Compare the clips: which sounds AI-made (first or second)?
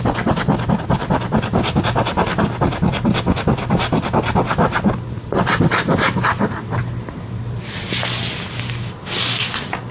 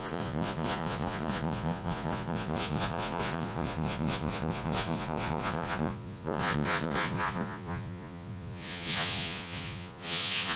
second